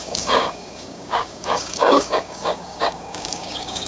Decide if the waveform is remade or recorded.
remade